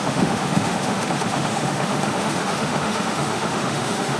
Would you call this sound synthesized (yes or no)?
yes